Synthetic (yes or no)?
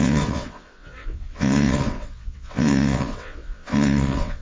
yes